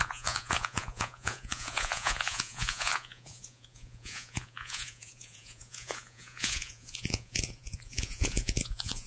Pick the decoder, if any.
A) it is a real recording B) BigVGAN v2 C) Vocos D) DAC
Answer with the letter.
C